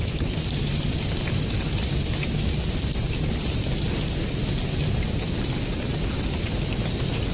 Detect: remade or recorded recorded